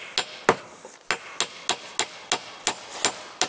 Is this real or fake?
real